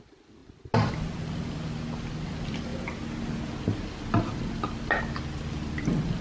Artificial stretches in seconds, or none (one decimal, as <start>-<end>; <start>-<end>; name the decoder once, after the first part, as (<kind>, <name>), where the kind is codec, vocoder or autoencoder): 0.0-0.4 (vocoder, BigVGAN v2); 2.2-2.7; 5.0-6.2